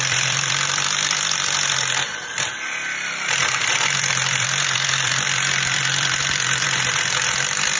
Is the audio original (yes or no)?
no